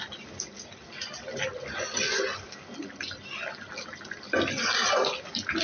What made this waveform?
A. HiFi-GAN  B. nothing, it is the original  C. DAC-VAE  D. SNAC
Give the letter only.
B